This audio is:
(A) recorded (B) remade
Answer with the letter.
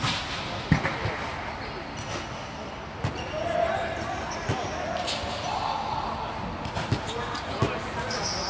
A